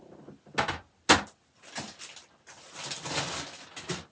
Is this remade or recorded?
recorded